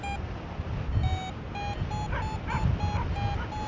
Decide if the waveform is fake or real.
real